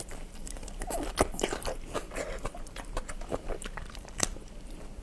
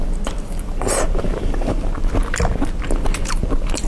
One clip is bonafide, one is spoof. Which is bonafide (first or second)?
second